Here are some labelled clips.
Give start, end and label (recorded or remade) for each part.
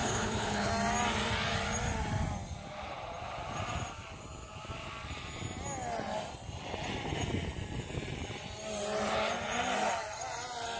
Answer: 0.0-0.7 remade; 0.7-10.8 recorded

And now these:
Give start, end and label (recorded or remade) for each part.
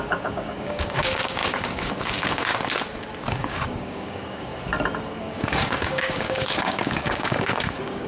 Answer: 0.0-2.5 remade; 2.5-3.3 recorded; 3.3-4.5 remade; 4.5-5.2 recorded; 5.2-8.1 remade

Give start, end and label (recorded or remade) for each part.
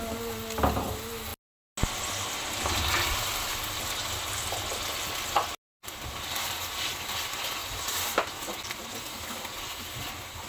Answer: 0.0-10.5 recorded